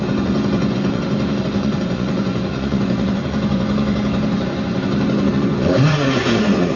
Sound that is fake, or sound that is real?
fake